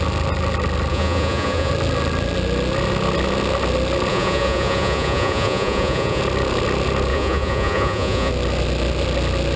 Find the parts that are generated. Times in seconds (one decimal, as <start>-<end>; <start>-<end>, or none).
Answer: 0.9-1.7; 4.1-6.2; 7.1-8.3